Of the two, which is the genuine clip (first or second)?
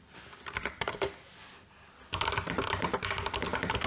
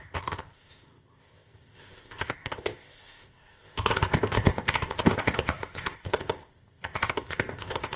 first